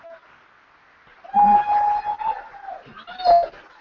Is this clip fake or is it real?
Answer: real